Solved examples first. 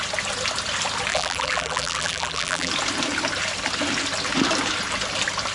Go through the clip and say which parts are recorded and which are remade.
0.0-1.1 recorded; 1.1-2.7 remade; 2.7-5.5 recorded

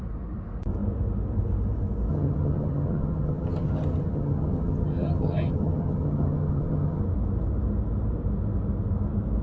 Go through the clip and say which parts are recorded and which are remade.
0.0-2.1 recorded; 2.1-7.0 remade; 7.0-9.4 recorded

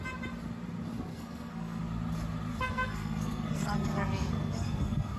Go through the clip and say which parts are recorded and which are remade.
0.0-1.1 recorded; 1.1-1.8 remade; 1.8-2.5 recorded; 2.5-5.2 remade

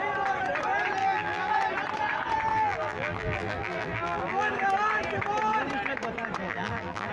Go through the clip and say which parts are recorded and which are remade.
0.0-1.0 recorded; 1.0-1.5 remade; 1.5-2.5 recorded; 2.5-4.5 remade; 4.5-6.4 recorded; 6.4-7.1 remade

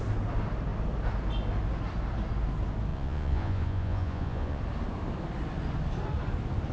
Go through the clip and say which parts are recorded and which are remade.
0.0-2.9 recorded; 2.9-4.6 remade; 4.6-6.7 recorded

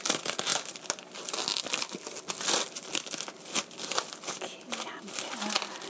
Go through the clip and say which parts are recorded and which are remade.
0.0-5.9 recorded

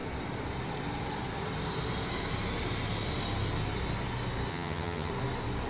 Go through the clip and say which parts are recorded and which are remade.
0.0-4.5 recorded; 4.5-5.1 remade; 5.1-5.7 recorded

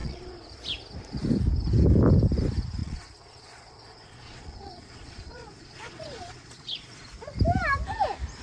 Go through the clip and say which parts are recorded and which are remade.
0.0-0.5 remade; 0.5-2.8 recorded; 2.8-7.1 remade; 7.1-8.4 recorded